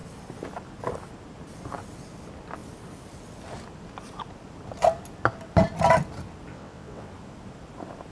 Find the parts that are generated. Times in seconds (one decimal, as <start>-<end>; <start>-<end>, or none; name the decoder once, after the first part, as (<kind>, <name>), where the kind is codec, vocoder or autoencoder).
6.5-7.1 (vocoder, WaveNeXt)